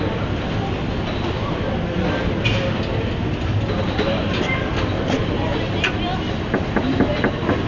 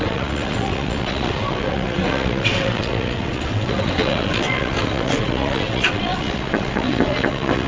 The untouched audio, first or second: first